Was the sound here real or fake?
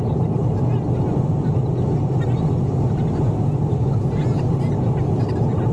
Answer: real